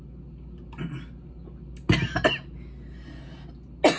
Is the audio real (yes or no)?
yes